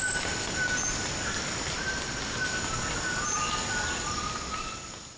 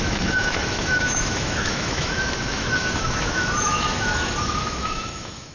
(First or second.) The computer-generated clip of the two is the second